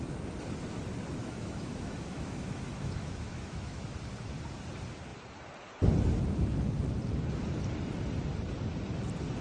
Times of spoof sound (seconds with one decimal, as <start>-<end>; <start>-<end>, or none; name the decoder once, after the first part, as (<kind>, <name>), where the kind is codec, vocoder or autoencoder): 1.2-4.0 (autoencoder, DAC-VAE)